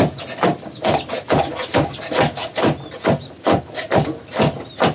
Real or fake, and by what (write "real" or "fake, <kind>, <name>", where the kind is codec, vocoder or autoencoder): real